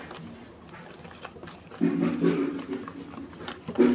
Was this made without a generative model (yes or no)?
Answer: yes